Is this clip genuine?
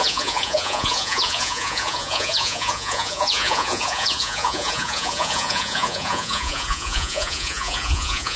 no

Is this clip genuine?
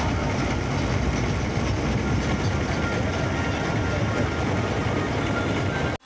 yes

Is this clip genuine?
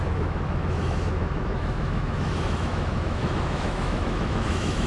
no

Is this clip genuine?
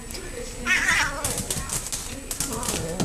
yes